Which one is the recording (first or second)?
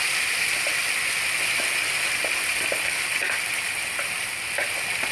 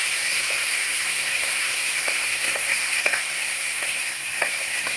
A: first